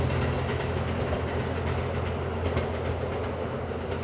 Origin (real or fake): real